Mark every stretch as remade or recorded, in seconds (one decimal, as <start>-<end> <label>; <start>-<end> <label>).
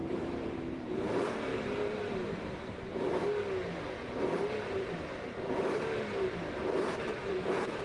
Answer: 0.0-1.1 remade; 1.1-1.5 recorded; 1.5-3.0 remade; 3.0-4.0 recorded; 4.0-7.8 remade